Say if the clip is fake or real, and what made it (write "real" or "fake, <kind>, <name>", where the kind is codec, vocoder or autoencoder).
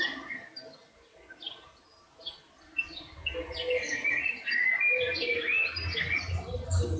real